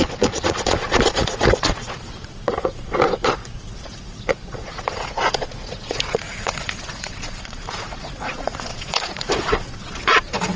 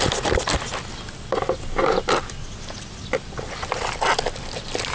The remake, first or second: first